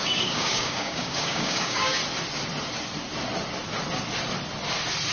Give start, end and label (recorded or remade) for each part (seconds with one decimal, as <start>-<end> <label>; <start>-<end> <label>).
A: 0.0-2.0 remade; 2.0-5.1 recorded